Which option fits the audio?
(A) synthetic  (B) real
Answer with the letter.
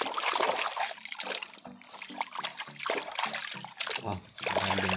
B